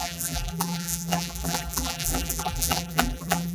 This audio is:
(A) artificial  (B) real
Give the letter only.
A